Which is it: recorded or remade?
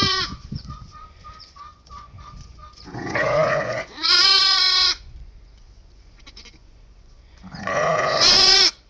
remade